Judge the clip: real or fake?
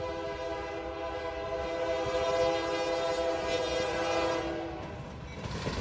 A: real